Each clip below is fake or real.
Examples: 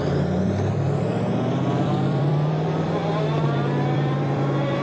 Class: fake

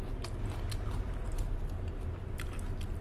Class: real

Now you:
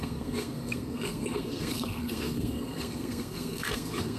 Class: fake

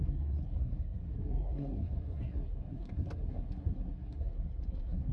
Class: fake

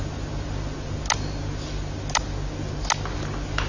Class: real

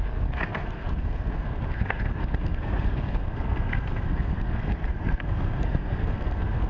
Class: fake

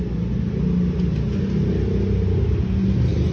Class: real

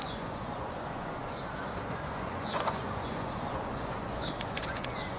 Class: fake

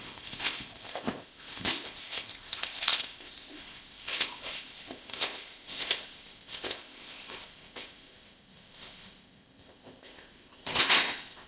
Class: fake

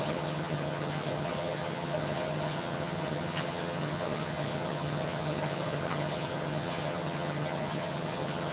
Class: fake